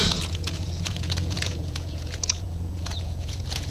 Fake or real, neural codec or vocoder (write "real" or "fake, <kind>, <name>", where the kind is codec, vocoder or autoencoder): fake, vocoder, Vocos